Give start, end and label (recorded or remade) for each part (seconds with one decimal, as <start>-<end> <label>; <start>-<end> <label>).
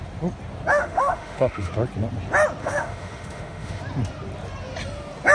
0.0-0.7 recorded; 0.7-1.7 remade; 1.7-2.6 recorded; 2.6-3.8 remade; 3.8-5.3 recorded